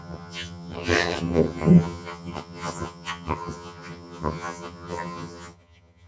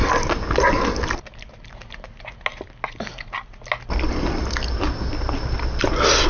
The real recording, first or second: second